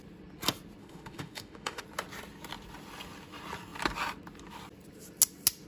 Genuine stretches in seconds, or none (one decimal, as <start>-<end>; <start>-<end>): 0.0-0.8; 1.8-5.7